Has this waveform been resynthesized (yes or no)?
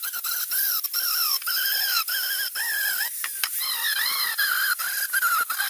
no